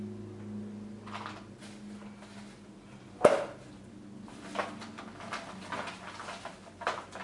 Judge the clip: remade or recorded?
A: recorded